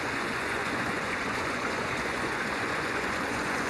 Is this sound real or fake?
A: fake